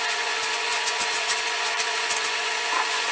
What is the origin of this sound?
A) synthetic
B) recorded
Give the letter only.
A